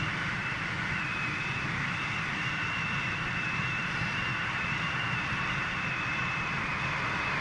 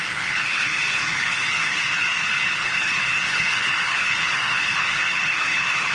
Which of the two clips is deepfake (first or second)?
second